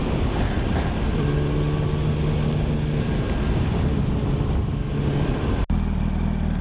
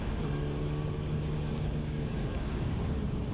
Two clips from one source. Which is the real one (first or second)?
first